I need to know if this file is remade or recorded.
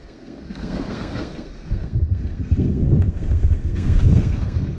remade